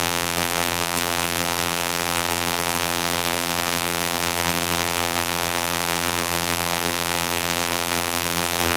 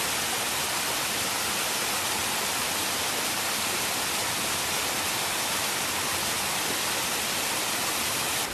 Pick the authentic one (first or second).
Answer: second